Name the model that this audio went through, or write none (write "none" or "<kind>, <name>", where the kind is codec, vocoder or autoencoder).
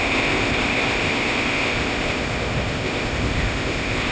codec, ZipCodec